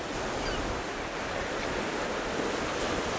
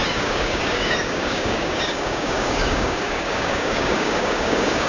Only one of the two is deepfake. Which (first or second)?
second